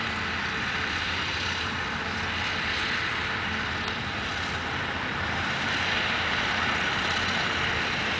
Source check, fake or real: fake